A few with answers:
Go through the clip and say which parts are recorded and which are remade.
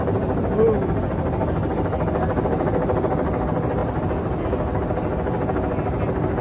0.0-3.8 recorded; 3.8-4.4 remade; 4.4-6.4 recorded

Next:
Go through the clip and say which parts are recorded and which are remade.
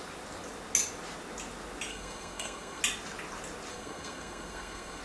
0.0-1.9 recorded; 1.9-2.8 remade; 2.8-3.7 recorded; 3.7-5.0 remade